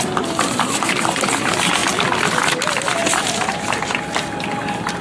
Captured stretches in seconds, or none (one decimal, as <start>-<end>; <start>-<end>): 0.0-3.0; 3.8-5.0